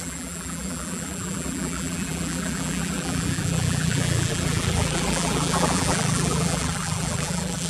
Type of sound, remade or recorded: remade